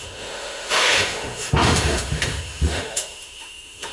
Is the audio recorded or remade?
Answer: remade